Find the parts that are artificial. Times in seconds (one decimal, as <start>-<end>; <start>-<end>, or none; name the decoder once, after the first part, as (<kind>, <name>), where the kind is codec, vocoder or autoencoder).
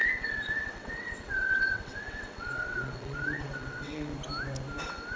0.0-4.1 (vocoder, WaveNeXt); 4.8-5.2